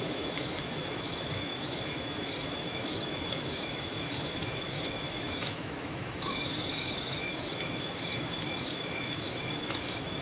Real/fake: fake